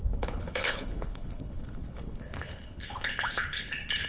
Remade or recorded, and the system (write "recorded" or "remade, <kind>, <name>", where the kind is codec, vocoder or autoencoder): remade, codec, HILCodec